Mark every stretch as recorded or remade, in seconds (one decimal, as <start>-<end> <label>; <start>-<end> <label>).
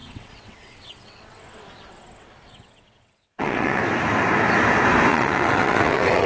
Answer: 0.0-3.8 remade; 3.8-5.1 recorded; 5.1-6.3 remade